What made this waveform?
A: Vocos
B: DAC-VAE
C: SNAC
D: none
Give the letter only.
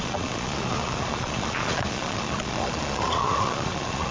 A